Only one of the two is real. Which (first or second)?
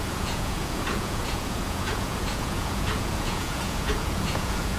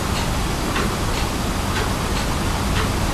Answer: second